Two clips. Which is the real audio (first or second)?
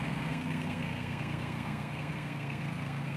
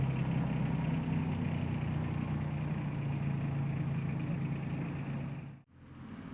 second